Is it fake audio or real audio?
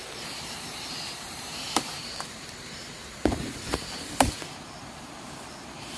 fake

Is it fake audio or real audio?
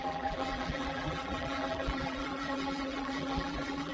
fake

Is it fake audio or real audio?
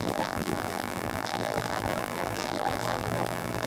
fake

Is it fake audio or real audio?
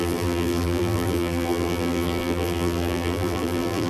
fake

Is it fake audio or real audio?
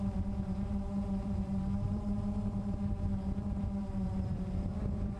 fake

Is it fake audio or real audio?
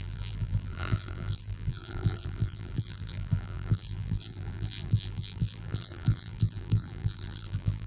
fake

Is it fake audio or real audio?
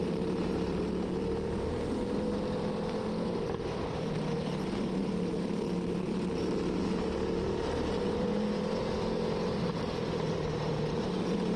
fake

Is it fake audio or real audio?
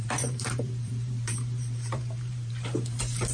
fake